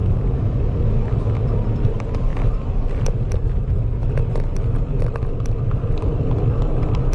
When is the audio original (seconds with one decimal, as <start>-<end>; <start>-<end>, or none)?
0.0-0.6; 2.3-6.2